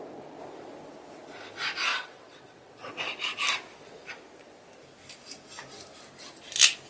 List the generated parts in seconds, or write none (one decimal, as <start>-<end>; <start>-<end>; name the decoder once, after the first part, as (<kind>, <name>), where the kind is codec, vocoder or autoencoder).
1.9-2.9 (vocoder, WaveNeXt)